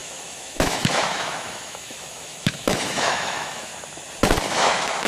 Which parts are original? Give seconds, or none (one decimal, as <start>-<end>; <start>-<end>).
3.7-4.5